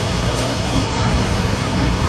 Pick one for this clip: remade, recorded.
remade